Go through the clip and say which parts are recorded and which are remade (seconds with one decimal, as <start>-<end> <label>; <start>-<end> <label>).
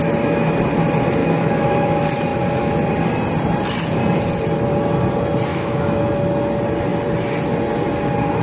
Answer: 0.0-1.2 recorded; 1.2-1.9 remade; 1.9-5.5 recorded; 5.5-6.0 remade; 6.0-8.4 recorded